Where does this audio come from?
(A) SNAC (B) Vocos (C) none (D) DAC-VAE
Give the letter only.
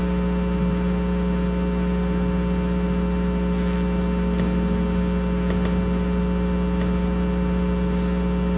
C